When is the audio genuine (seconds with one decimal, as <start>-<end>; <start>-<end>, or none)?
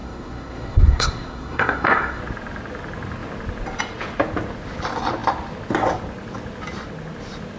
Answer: 2.2-7.6